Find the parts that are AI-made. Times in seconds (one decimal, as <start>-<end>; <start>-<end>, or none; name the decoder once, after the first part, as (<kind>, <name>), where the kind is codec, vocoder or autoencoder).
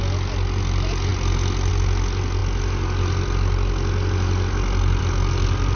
none